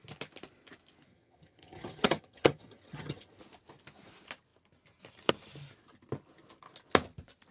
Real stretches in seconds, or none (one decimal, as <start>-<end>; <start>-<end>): 0.0-1.1; 3.4-7.5